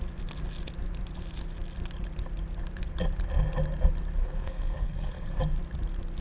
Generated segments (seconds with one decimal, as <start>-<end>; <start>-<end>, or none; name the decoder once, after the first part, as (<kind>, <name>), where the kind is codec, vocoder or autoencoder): 4.2-5.4 (codec, SNAC)